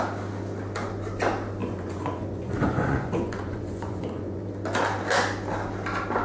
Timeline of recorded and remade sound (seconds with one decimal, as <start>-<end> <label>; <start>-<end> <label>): 0.0-1.6 recorded; 1.6-4.4 remade; 4.4-6.2 recorded

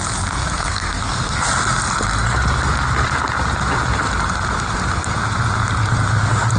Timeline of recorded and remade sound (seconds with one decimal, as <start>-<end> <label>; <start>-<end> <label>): 0.0-0.4 recorded; 0.4-1.5 remade; 1.5-6.6 recorded

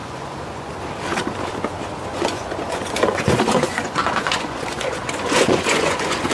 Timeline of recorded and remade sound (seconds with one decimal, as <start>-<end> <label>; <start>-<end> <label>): 0.0-0.7 remade; 0.7-2.1 recorded; 2.1-6.3 remade

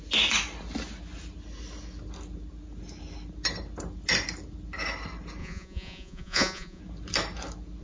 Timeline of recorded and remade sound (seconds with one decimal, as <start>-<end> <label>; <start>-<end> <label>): 0.0-5.4 recorded; 5.4-6.8 remade; 6.8-7.8 recorded